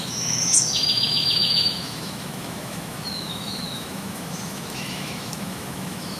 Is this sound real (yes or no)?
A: no